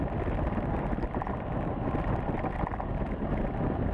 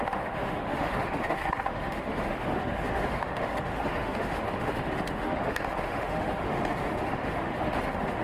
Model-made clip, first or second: second